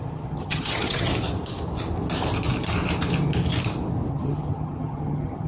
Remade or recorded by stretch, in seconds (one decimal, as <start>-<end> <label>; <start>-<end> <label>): 0.0-1.1 remade; 1.1-4.1 recorded; 4.1-5.5 remade